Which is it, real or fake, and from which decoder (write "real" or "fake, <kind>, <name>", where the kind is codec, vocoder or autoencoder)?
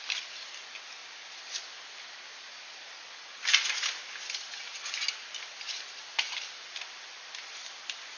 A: real